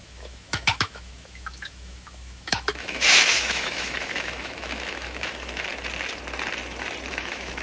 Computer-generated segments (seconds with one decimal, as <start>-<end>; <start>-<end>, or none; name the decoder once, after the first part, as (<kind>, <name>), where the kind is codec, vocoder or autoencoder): 0.0-5.7 (autoencoder, DAC-VAE); 7.1-7.6